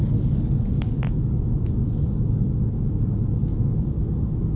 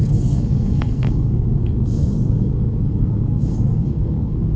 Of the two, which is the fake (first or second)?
second